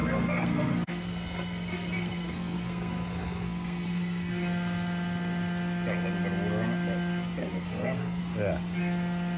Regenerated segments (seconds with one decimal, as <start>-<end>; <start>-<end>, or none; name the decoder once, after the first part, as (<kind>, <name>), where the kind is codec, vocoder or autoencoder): 0.0-4.3 (codec, SNAC); 7.4-8.2